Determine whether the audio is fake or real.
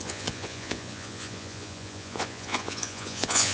fake